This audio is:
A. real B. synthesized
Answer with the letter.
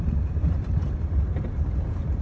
B